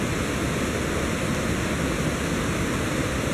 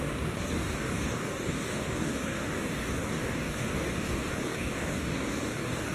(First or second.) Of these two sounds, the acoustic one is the first